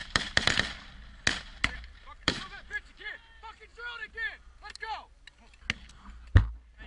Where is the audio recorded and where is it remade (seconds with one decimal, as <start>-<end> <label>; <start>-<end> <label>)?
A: 0.0-0.5 remade; 0.5-1.5 recorded; 1.5-3.1 remade; 3.1-6.9 recorded